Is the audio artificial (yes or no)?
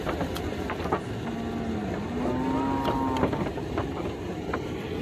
no